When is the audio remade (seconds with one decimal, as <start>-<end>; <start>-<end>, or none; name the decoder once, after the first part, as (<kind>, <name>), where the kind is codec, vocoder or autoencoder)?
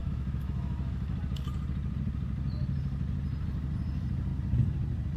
0.0-1.2 (autoencoder, DAC-VAE)